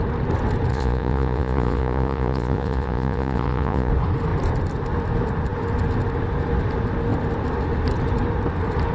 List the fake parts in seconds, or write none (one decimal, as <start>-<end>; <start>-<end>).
0.7-3.9